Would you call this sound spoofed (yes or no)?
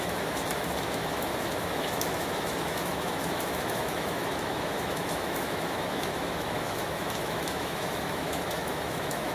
yes